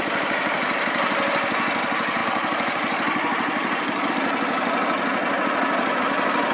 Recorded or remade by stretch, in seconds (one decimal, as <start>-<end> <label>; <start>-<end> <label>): 0.0-2.2 recorded; 2.2-4.1 remade; 4.1-6.5 recorded